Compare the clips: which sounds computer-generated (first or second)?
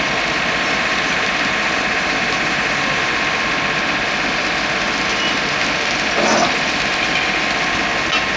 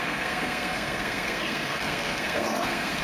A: second